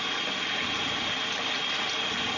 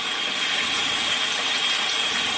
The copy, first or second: second